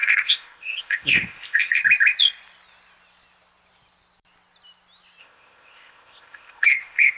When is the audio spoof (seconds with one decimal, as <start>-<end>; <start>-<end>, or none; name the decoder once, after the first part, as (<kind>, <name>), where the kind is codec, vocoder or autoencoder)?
0.0-1.8 (codec, ZipCodec); 5.2-7.2